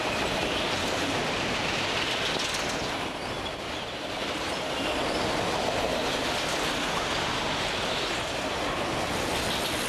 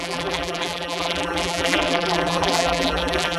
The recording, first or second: first